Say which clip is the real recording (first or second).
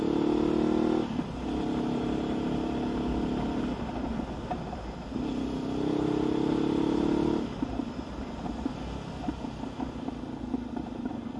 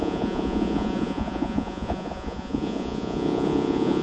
first